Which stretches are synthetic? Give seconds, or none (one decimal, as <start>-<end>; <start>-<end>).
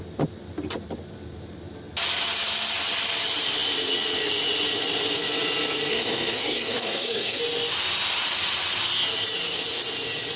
5.9-7.4